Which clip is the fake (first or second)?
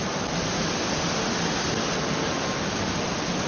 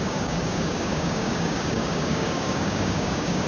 second